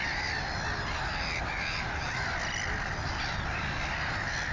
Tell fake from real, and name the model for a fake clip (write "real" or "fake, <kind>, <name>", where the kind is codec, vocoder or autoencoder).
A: real